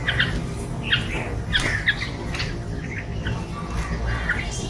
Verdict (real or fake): real